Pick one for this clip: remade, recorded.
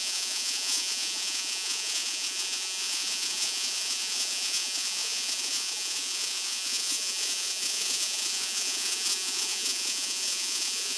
remade